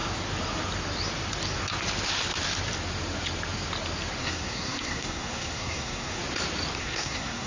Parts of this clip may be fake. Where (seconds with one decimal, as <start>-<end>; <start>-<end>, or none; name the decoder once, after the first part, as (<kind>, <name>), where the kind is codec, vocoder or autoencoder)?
4.2-6.2 (codec, SNAC); 6.8-7.5